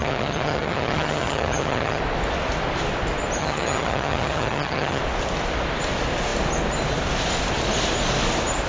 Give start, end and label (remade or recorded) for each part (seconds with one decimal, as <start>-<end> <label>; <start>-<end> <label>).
0.0-2.0 remade; 2.0-3.4 recorded; 3.4-5.0 remade; 5.0-8.7 recorded

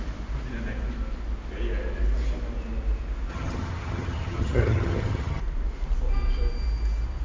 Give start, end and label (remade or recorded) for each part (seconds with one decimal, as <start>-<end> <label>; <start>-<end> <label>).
0.0-3.3 recorded; 3.3-5.4 remade; 5.4-7.2 recorded

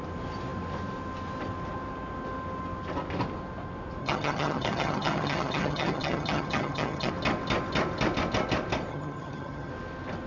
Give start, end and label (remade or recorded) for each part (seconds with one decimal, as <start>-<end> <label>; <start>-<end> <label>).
0.0-4.0 recorded; 4.0-7.1 remade; 7.1-8.9 recorded; 8.9-9.7 remade; 9.7-10.3 recorded

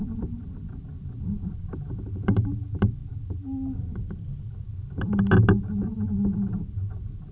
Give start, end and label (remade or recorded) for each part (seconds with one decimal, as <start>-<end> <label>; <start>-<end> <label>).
0.0-7.3 recorded

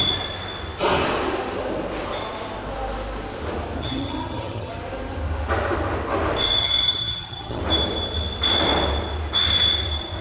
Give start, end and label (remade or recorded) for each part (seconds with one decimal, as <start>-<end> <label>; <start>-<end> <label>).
0.0-3.8 recorded; 3.8-4.8 remade; 4.8-6.6 recorded; 6.6-7.6 remade; 7.6-10.2 recorded

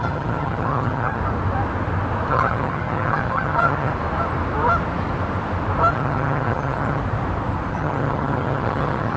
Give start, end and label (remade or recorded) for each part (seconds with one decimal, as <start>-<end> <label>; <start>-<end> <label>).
0.0-1.2 remade; 1.2-2.3 recorded; 2.3-3.9 remade; 3.9-5.9 recorded; 5.9-7.0 remade; 7.0-7.7 recorded; 7.7-9.2 remade